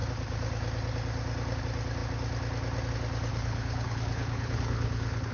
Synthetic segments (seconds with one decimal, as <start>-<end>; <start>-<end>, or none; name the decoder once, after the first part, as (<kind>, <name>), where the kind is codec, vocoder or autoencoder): 3.3-5.3 (codec, HILCodec)